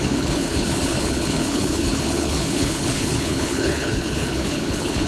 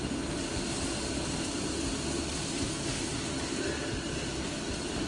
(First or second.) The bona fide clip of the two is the second